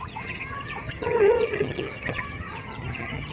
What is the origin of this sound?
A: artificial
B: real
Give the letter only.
A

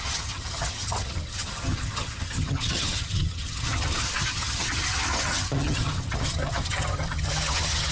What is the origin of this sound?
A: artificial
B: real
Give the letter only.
A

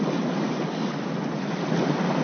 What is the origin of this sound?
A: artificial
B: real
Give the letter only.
B